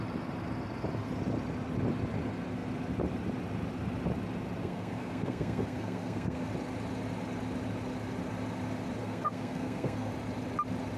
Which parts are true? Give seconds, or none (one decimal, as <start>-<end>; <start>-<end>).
0.0-4.6; 6.5-9.0; 10.1-11.0